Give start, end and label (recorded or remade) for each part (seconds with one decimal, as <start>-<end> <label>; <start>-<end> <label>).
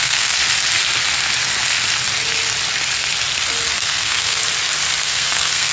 0.0-0.4 remade; 0.4-3.8 recorded; 3.8-4.4 remade; 4.4-5.0 recorded; 5.0-5.7 remade